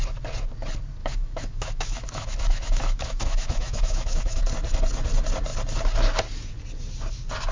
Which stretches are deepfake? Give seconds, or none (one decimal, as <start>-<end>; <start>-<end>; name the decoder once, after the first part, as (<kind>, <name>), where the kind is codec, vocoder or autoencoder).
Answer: 1.0-4.4 (autoencoder, DAC-VAE)